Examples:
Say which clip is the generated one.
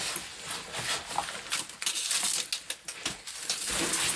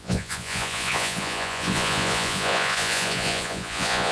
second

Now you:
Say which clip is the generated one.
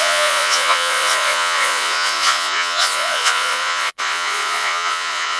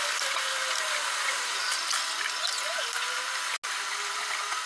first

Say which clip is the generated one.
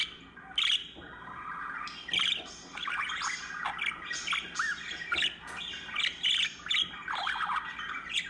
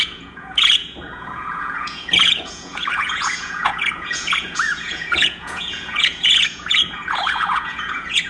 second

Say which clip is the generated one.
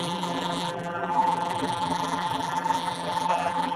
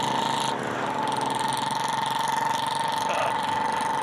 first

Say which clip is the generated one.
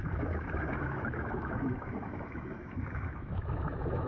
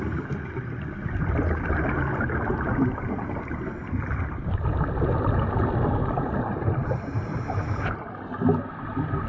first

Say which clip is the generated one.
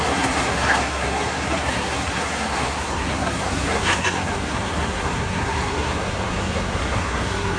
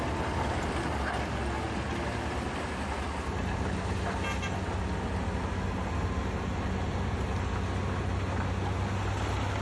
first